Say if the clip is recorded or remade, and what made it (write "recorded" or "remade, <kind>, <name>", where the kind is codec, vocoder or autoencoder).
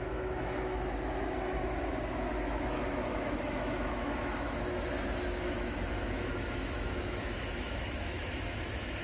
remade, autoencoder, DAC-VAE